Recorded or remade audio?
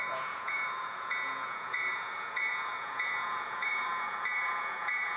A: remade